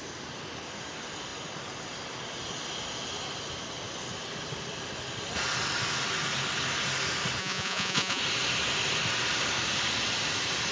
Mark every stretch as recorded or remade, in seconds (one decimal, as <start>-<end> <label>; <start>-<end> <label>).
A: 0.0-7.4 recorded; 7.4-8.2 remade; 8.2-10.7 recorded